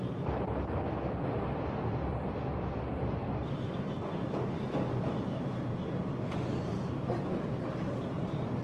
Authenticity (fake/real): real